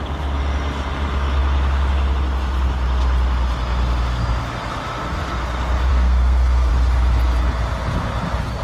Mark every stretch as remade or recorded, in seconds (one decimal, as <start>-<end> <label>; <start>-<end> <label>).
0.0-5.9 recorded; 5.9-6.7 remade; 6.7-8.6 recorded